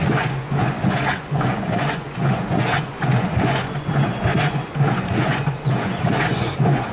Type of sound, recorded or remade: remade